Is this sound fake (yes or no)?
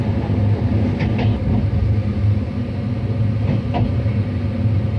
no